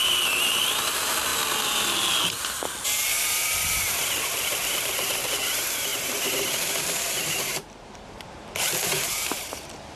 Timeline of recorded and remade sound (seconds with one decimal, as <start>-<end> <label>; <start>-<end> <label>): 0.0-1.3 remade; 1.3-2.8 recorded; 2.8-10.0 remade